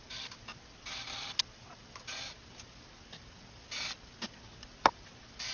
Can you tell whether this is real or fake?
real